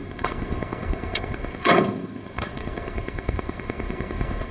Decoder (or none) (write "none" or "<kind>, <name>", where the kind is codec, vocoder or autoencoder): codec, SNAC